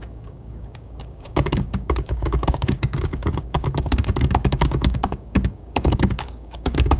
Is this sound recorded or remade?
remade